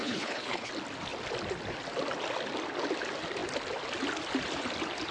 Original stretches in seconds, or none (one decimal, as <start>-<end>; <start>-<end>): 0.7-5.1